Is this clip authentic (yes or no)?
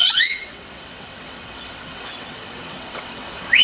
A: no